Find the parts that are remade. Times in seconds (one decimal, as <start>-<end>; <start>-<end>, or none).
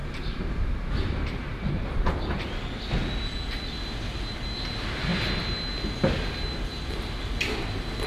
0.0-2.5